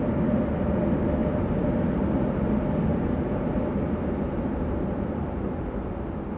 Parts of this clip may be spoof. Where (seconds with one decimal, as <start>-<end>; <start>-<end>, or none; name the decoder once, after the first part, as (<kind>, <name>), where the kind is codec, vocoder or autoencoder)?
2.9-5.6 (vocoder, BigVGAN v2)